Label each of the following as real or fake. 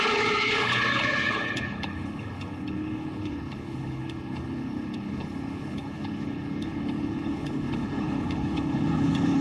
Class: fake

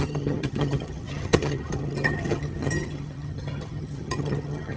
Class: fake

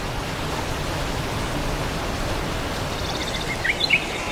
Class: real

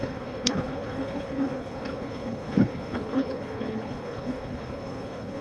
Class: fake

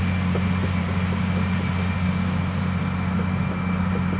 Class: real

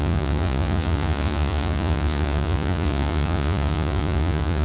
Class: fake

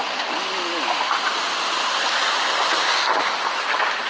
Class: real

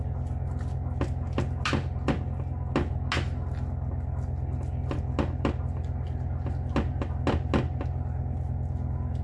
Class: real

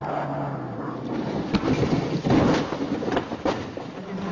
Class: real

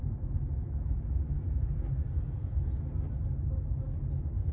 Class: real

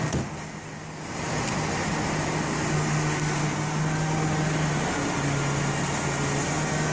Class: real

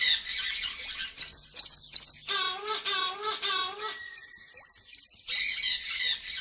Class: real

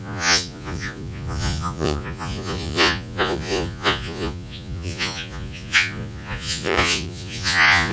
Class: fake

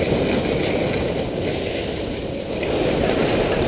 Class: real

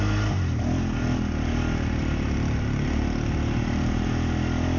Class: real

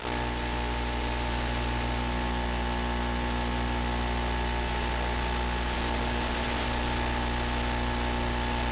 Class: real